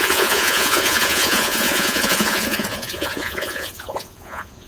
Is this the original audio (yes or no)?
no